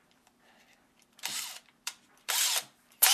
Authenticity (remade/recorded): remade